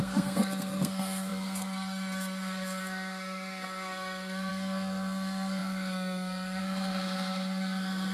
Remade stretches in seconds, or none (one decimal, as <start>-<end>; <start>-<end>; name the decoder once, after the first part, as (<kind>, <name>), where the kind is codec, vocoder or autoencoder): 0.0-8.1 (codec, SNAC)